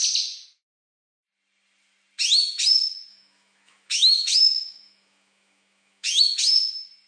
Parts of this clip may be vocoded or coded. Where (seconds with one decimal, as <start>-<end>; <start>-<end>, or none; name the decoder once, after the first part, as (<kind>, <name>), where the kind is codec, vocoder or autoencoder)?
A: 3.1-6.2 (autoencoder, DAC-VAE)